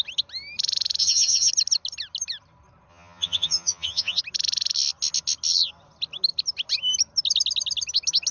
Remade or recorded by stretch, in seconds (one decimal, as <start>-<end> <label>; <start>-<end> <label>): 0.0-1.0 recorded; 1.0-1.5 remade; 1.5-2.9 recorded; 2.9-4.2 remade; 4.2-8.3 recorded